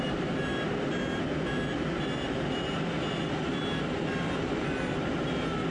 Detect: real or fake real